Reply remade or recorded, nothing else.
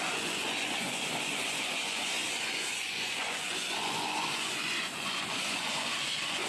remade